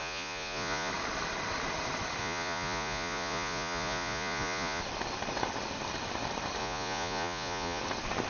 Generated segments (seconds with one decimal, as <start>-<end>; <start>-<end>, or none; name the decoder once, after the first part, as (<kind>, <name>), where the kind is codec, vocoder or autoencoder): 0.0-0.9 (vocoder, Vocos); 2.2-4.8; 6.6-7.8